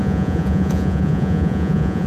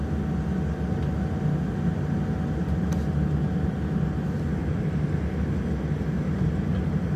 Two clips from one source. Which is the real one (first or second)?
second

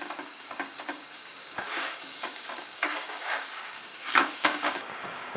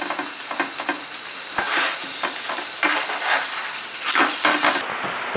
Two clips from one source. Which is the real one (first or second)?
second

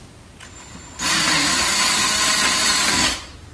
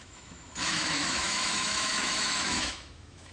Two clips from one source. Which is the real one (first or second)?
first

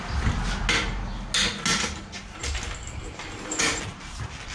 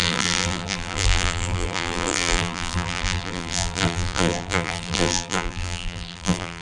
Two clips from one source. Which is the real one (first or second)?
first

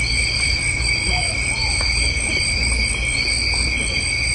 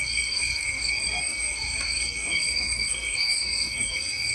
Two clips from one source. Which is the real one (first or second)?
first